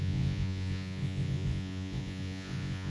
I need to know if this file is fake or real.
fake